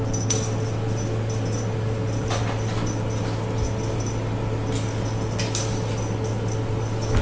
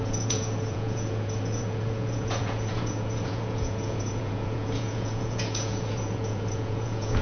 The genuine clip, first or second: first